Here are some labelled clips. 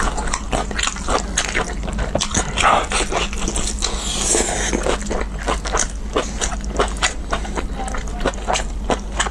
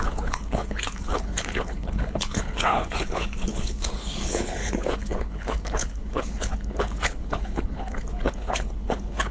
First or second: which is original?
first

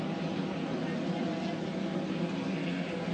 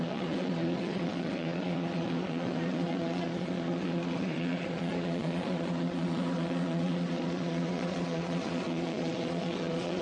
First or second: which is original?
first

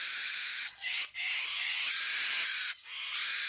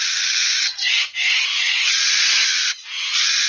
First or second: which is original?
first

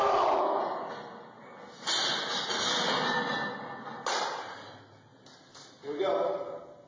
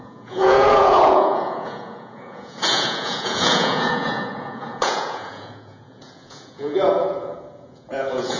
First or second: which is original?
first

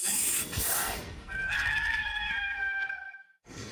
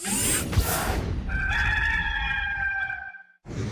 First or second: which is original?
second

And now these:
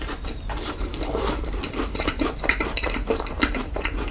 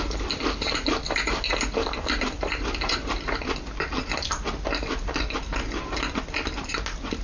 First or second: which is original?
second